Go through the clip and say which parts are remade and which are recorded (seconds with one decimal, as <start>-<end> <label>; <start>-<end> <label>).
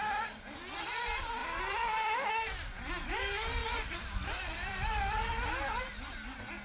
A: 0.0-1.4 recorded; 1.4-2.3 remade; 2.3-3.6 recorded; 3.6-5.2 remade; 5.2-6.6 recorded